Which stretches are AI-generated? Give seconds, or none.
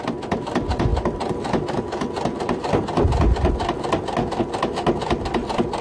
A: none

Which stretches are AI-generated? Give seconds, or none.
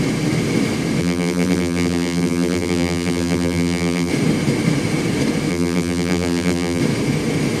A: 1.0-4.1 (vocoder, BigVGAN v2); 5.5-6.8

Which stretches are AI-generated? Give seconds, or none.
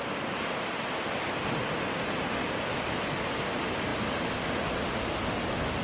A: none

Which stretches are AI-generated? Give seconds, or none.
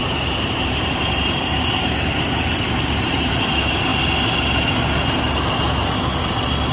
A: 0.0-3.3 (vocoder, BigVGAN v2)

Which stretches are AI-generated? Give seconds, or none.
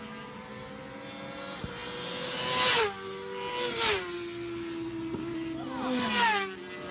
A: none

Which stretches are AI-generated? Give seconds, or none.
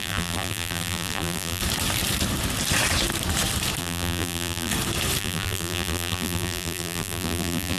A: 0.0-1.6 (vocoder, BigVGAN v2); 3.8-4.7; 5.2-7.8